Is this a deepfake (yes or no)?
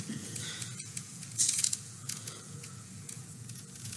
yes